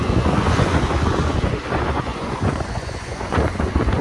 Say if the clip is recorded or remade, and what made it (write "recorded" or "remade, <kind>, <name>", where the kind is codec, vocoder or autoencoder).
remade, vocoder, Vocos